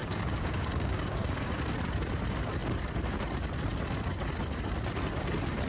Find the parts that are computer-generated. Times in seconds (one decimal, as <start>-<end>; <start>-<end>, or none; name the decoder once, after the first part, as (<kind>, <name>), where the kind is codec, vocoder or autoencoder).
0.0-1.6 (codec, DAC)